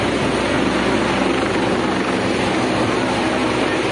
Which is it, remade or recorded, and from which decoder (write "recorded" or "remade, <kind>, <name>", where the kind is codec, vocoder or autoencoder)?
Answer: recorded